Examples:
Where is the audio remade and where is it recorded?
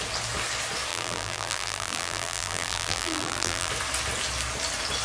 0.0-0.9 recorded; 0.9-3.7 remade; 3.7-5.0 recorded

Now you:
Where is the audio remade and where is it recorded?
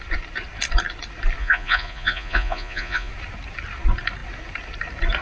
0.0-1.4 recorded; 1.4-3.1 remade; 3.1-5.2 recorded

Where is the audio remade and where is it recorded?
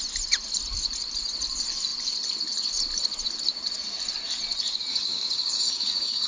0.0-4.9 recorded; 4.9-6.3 remade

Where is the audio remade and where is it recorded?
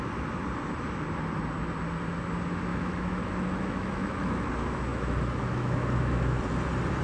0.0-2.7 recorded; 2.7-4.5 remade; 4.5-4.9 recorded; 4.9-6.4 remade; 6.4-7.0 recorded